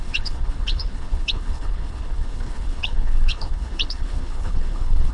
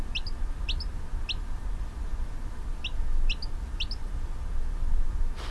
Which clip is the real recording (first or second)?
second